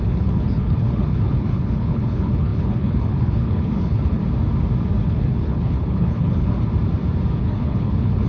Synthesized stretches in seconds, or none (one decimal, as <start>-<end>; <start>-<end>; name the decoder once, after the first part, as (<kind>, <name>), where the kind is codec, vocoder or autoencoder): 0.0-4.2 (codec, HILCodec); 5.0-6.7; 7.4-8.3